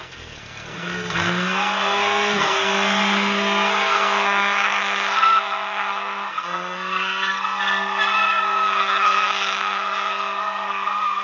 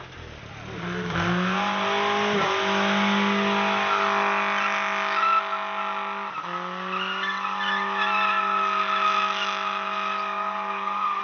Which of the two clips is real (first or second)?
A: second